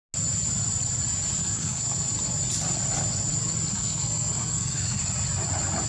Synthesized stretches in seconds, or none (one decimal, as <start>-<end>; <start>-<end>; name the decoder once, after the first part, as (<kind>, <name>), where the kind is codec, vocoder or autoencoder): 1.4-2.1 (codec, SNAC); 3.7-5.0